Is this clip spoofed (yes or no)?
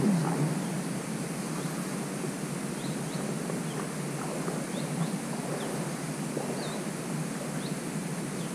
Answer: no